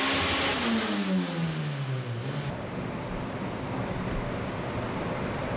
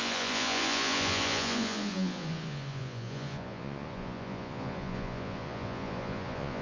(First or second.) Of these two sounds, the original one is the first